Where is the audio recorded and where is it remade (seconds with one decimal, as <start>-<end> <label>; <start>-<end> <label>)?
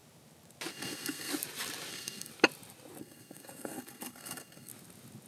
0.0-0.7 recorded; 0.7-1.3 remade; 1.3-1.9 recorded; 1.9-2.3 remade; 2.3-3.0 recorded; 3.0-4.7 remade; 4.7-5.3 recorded